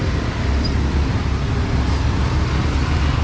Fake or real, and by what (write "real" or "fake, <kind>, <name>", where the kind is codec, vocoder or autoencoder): real